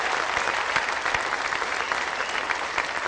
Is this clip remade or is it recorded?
recorded